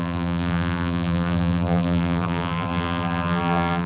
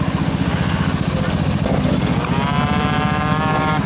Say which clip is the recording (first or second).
second